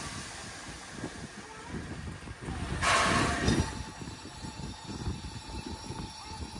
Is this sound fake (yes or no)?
no